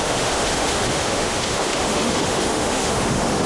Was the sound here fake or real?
fake